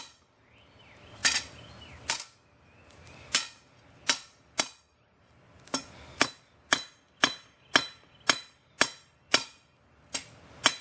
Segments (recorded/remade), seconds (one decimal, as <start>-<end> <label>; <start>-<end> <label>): 0.0-10.8 recorded